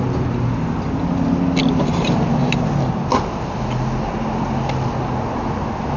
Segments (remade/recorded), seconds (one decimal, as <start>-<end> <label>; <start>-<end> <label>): 0.0-6.0 recorded